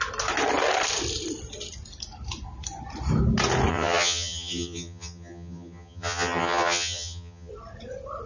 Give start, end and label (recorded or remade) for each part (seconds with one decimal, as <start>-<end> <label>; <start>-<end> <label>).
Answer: 0.0-3.7 recorded; 3.7-7.5 remade; 7.5-8.3 recorded